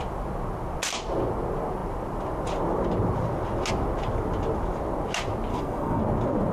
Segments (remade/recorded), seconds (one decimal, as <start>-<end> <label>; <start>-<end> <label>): 0.0-5.5 recorded; 5.5-6.0 remade; 6.0-6.5 recorded